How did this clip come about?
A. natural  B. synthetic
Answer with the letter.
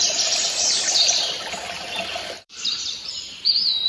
B